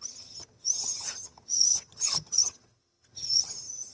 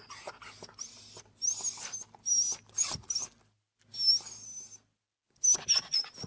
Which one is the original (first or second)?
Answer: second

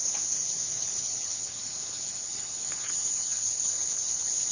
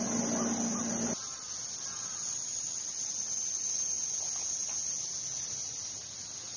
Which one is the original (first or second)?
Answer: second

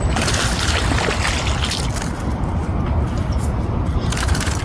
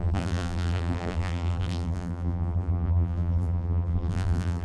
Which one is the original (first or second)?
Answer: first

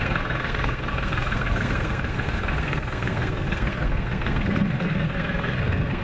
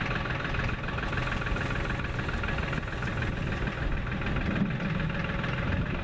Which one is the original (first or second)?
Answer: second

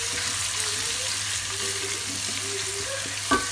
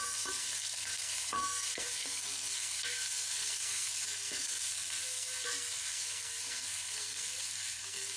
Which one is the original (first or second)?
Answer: first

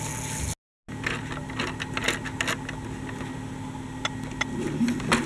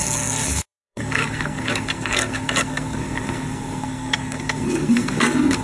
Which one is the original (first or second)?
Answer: first